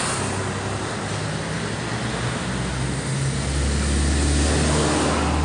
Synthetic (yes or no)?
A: no